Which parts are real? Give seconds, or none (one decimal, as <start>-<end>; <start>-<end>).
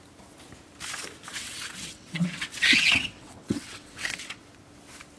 0.0-1.3; 4.4-5.2